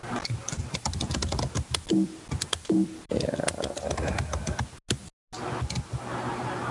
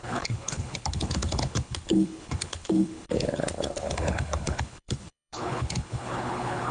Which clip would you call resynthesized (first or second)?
second